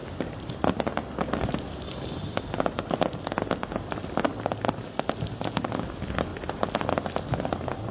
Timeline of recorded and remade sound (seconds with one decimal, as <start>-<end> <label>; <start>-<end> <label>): 0.0-4.7 remade; 4.7-7.9 recorded